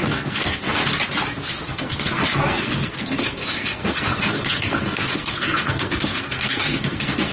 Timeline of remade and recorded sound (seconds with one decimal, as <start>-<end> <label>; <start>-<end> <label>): 0.0-0.8 remade; 0.8-1.7 recorded; 1.7-7.3 remade